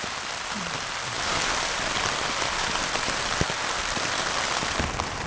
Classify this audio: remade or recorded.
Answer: recorded